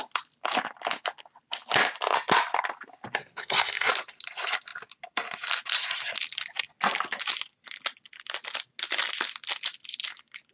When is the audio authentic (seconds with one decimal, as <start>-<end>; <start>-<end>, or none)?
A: 0.0-3.2; 3.9-10.5